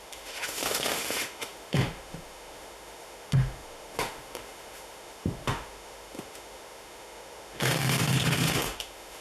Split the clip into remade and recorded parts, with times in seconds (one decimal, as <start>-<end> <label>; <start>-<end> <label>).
0.0-9.2 remade